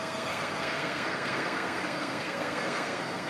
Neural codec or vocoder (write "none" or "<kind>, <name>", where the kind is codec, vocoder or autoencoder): codec, SNAC